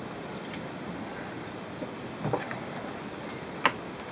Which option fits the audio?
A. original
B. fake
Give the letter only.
A